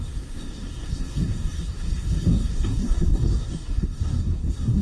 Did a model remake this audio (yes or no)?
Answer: yes